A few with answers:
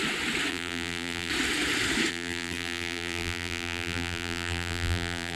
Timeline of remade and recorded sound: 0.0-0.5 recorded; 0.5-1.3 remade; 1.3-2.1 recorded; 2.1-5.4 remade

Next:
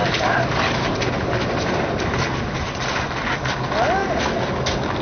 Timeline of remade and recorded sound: 0.0-3.0 remade; 3.0-5.0 recorded

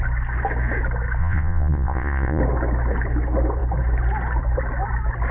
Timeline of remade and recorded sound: 0.0-1.2 recorded; 1.2-2.4 remade; 2.4-5.3 recorded

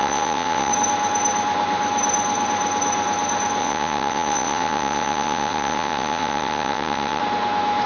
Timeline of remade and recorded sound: 0.0-0.7 remade; 0.7-3.6 recorded; 3.6-7.2 remade; 7.2-7.9 recorded

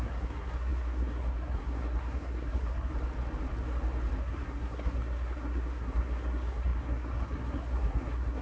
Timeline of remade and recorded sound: 0.0-2.9 remade; 2.9-4.2 recorded; 4.2-8.4 remade

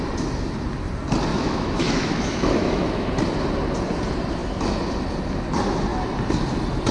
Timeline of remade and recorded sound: 0.0-1.3 recorded; 1.3-3.1 remade; 3.1-6.9 recorded

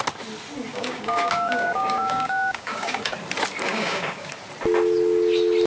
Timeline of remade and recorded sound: 0.0-0.7 recorded; 0.7-3.0 remade; 3.0-3.7 recorded; 3.7-4.3 remade; 4.3-5.7 recorded